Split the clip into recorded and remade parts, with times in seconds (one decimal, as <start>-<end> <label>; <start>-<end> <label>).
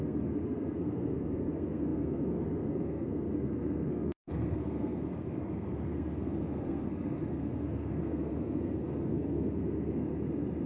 0.0-10.1 remade; 10.1-10.7 recorded